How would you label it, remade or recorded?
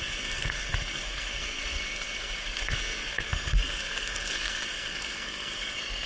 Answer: remade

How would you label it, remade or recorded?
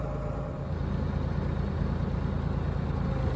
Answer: recorded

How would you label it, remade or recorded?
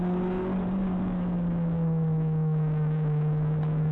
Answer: remade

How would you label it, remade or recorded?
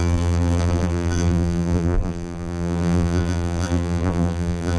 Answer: remade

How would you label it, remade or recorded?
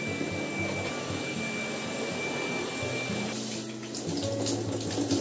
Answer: recorded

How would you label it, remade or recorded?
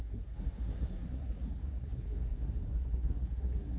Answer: remade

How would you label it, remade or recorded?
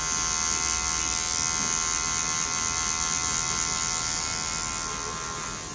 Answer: recorded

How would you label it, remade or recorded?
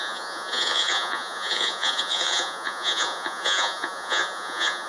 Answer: remade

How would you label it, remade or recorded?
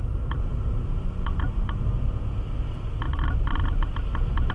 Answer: recorded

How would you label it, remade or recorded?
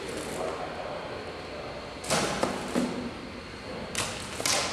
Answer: recorded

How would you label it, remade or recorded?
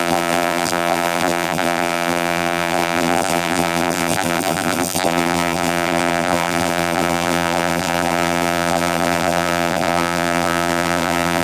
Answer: remade